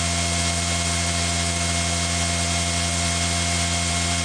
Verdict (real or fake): real